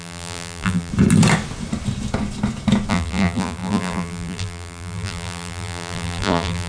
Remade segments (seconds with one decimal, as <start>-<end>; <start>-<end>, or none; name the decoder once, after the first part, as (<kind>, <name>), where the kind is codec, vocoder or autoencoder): 0.0-0.9 (vocoder, BigVGAN v2); 2.9-6.7